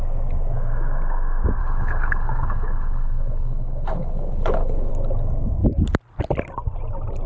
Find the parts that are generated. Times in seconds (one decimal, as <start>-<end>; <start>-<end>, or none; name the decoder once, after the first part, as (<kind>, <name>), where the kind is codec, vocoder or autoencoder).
1.6-4.9 (codec, HILCodec)